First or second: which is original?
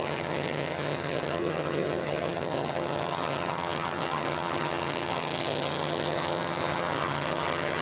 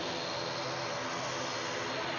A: second